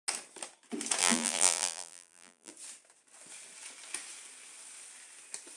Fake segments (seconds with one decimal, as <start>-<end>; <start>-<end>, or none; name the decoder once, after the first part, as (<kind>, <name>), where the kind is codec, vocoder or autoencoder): 1.0-2.5 (vocoder, BigVGAN v2)